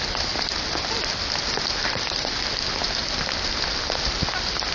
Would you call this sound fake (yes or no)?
no